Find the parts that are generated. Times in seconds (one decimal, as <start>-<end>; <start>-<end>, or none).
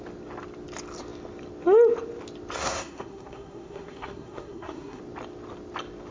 2.6-5.0